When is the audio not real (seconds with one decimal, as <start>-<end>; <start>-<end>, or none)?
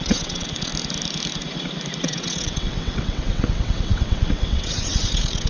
0.0-0.7; 2.0-5.5